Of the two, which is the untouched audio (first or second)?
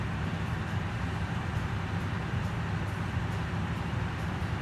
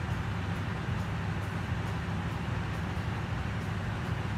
second